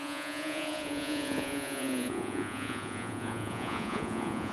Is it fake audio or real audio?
fake